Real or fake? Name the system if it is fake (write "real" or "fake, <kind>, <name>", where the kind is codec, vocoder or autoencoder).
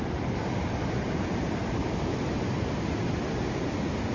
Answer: real